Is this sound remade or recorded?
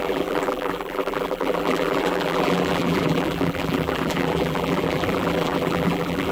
remade